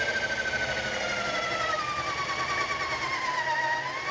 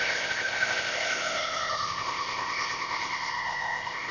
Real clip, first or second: first